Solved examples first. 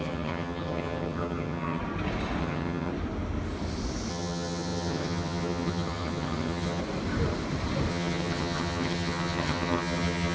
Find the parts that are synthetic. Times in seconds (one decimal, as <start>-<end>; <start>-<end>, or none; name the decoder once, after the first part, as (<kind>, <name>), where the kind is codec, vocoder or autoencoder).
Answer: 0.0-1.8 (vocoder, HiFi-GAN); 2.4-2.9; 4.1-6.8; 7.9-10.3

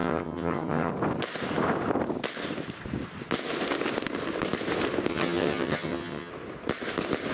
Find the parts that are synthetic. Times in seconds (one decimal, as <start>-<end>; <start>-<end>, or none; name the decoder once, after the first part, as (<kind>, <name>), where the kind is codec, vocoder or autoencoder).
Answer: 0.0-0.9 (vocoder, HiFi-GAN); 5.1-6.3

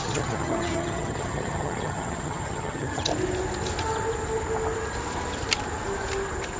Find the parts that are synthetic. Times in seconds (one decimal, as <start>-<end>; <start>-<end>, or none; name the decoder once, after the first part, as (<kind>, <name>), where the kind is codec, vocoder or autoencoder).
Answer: 0.0-3.1 (vocoder, HiFi-GAN)

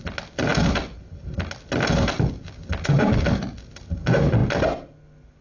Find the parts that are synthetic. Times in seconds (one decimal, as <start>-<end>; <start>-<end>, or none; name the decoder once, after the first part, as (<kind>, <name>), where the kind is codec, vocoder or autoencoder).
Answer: none